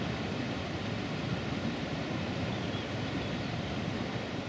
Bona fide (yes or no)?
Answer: yes